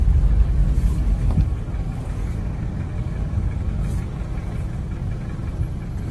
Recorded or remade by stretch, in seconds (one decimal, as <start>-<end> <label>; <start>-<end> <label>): 0.0-0.6 recorded; 0.6-3.8 remade; 3.8-6.1 recorded